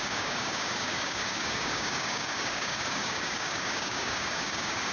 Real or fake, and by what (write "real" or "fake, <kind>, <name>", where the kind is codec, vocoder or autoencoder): fake, codec, DAC